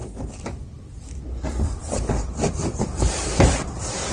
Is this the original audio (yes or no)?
no